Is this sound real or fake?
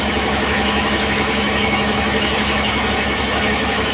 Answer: fake